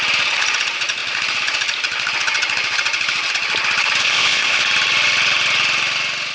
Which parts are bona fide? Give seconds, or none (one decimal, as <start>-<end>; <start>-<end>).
0.0-4.0; 4.6-6.3